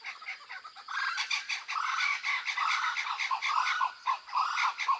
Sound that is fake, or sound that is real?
real